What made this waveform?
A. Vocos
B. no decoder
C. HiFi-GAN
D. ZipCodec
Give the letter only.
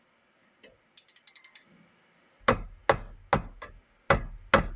B